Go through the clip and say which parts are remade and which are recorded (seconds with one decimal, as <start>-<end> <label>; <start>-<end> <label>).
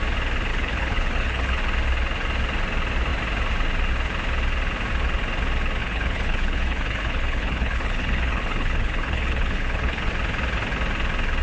0.0-0.5 recorded; 0.5-1.6 remade; 1.6-5.8 recorded; 5.8-10.1 remade; 10.1-11.4 recorded